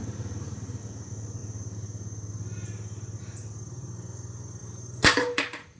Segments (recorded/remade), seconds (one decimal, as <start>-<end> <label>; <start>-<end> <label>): 0.0-0.8 remade; 0.8-4.6 recorded; 4.6-5.8 remade

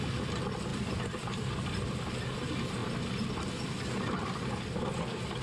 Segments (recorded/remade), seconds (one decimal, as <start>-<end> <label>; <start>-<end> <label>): 0.0-0.7 recorded; 0.7-1.8 remade; 1.8-5.4 recorded

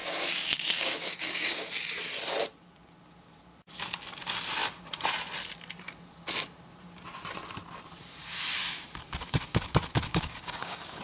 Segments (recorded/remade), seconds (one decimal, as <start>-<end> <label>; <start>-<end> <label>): 0.0-1.7 remade; 1.7-10.1 recorded; 10.1-11.0 remade